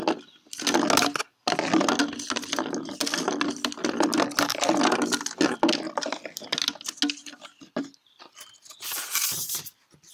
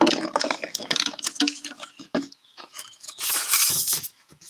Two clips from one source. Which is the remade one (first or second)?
second